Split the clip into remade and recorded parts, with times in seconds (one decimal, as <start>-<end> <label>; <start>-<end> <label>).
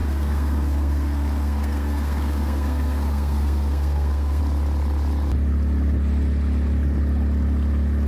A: 0.0-4.4 remade; 4.4-8.1 recorded